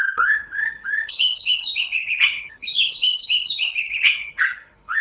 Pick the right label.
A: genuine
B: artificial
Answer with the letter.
B